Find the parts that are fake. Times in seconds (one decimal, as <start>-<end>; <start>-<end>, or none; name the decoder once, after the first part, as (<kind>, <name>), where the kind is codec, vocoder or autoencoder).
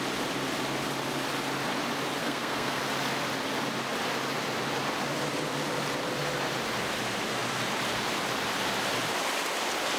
2.2-2.8 (codec, SNAC)